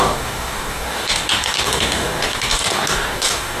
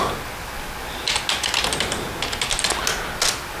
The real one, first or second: second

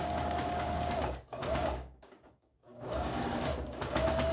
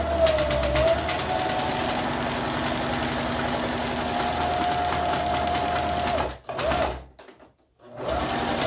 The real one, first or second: second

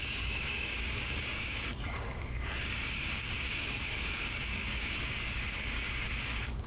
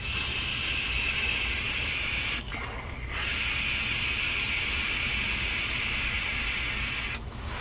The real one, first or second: second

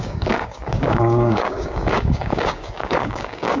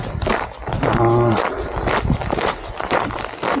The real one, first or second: second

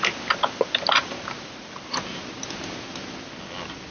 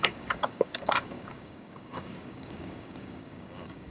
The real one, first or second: first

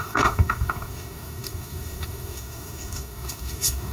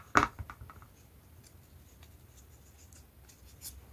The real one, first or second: second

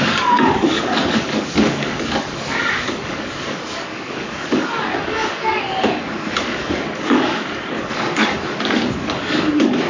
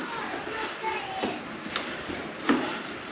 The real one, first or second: second